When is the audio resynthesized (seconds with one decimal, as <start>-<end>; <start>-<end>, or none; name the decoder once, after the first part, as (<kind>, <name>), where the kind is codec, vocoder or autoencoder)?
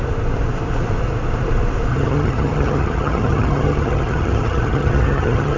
1.9-5.6 (vocoder, HiFi-GAN)